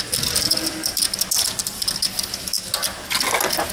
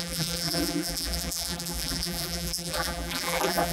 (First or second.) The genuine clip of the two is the first